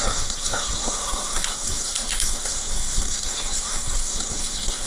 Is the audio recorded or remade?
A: remade